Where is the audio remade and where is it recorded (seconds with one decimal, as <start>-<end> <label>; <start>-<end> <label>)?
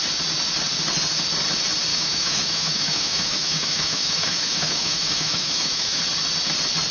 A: 0.0-1.9 recorded; 1.9-6.0 remade; 6.0-6.9 recorded